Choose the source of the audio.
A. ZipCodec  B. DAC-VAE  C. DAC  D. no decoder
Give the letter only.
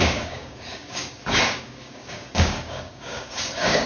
C